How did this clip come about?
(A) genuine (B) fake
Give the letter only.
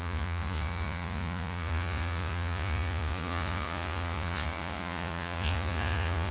B